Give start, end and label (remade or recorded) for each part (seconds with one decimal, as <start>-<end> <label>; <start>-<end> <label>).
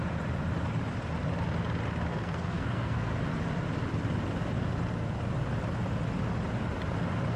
0.0-2.1 recorded; 2.1-3.1 remade; 3.1-7.4 recorded